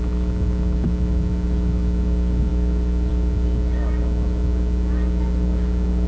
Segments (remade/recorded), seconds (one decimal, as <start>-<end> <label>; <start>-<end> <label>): 0.0-6.1 recorded

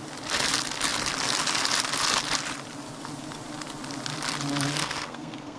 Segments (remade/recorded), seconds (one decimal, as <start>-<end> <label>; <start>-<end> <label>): 0.0-4.8 recorded; 4.8-5.6 remade

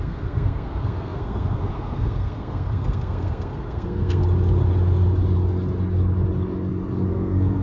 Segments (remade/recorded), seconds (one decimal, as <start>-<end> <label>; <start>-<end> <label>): 0.0-4.2 remade; 4.2-7.1 recorded; 7.1-7.6 remade

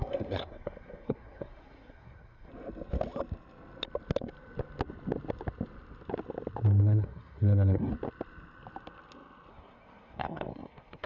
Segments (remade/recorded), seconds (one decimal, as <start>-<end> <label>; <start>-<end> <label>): 0.0-2.5 remade; 2.5-6.8 recorded; 6.8-7.9 remade; 7.9-9.5 recorded; 9.5-11.1 remade